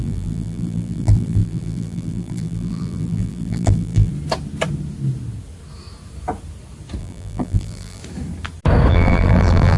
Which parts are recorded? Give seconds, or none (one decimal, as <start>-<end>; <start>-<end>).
4.1-7.0; 8.0-8.9